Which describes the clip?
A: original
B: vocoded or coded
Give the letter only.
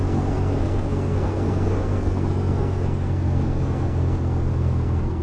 B